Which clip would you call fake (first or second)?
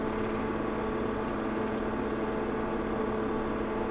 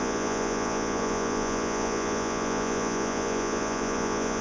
second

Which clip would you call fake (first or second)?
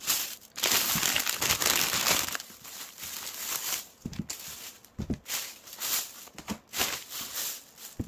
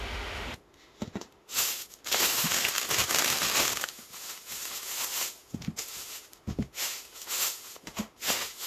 second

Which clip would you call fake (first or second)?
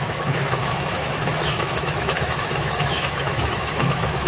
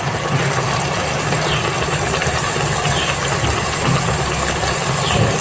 first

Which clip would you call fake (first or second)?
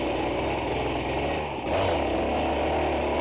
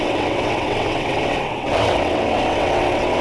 second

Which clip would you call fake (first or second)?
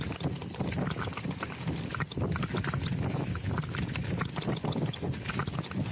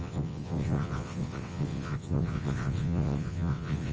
second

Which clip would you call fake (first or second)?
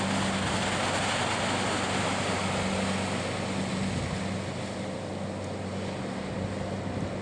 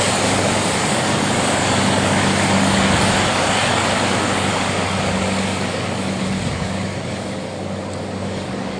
second